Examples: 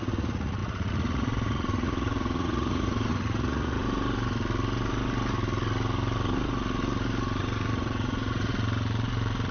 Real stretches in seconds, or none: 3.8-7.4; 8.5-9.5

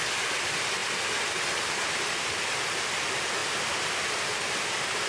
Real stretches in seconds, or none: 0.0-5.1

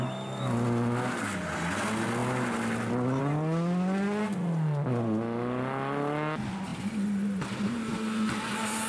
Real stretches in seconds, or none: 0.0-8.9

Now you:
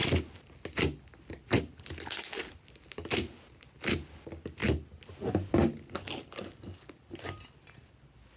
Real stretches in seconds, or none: 0.0-8.4

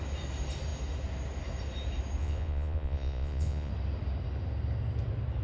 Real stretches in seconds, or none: 0.0-2.2; 3.7-5.4

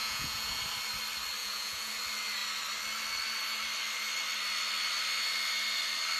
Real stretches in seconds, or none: 0.6-1.4; 1.9-6.2

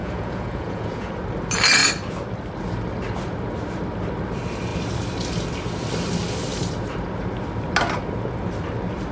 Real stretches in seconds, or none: 1.1-9.1

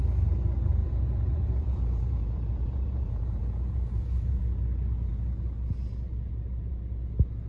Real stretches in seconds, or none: 0.0-0.8; 4.4-7.5